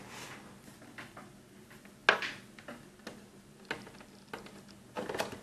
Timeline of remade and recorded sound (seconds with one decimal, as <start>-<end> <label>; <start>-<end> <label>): 0.0-5.4 recorded